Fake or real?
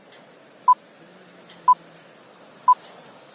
real